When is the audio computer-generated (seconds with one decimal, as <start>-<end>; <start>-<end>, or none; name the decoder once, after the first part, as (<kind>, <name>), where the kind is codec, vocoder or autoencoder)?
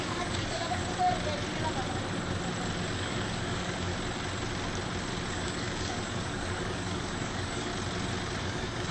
0.0-0.8 (codec, DAC); 2.9-3.9; 5.3-7.7; 8.4-8.9